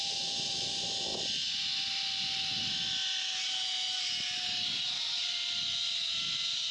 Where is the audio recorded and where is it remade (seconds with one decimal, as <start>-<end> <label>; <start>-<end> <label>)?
0.0-6.7 recorded